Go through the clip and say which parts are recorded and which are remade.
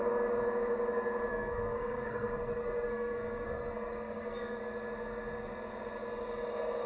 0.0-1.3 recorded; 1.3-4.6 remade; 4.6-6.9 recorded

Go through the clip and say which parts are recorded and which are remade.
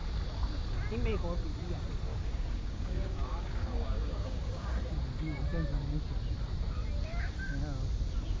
0.0-2.1 recorded; 2.1-4.8 remade; 4.8-8.4 recorded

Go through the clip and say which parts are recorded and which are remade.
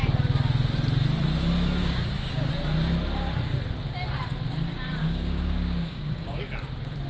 0.0-1.8 recorded; 1.8-2.5 remade; 2.5-5.0 recorded; 5.0-6.4 remade; 6.4-7.1 recorded